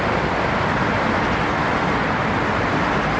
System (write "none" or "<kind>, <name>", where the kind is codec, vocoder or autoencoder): none